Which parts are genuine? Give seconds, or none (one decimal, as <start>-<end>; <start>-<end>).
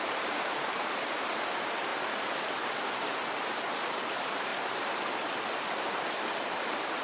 1.9-3.5; 4.5-5.6